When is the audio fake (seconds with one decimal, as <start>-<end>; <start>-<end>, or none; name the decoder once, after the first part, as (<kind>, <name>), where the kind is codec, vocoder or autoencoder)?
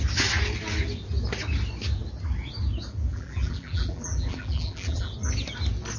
3.1-5.1 (vocoder, BigVGAN v2)